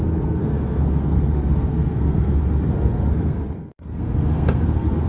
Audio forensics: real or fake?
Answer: fake